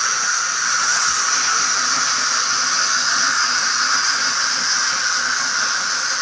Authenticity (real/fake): real